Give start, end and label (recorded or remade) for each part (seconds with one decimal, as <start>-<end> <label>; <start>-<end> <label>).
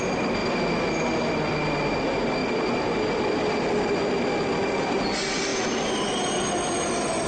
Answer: 0.0-7.3 recorded